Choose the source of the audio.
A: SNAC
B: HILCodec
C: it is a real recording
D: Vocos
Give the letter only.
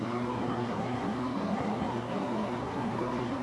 A